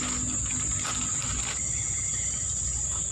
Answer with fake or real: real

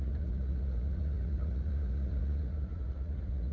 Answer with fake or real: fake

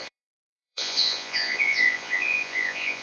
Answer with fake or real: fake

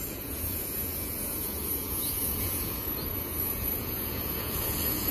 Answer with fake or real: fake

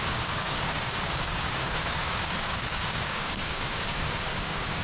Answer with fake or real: fake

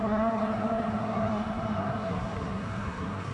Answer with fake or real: fake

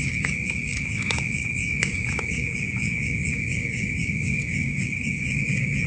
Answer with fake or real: fake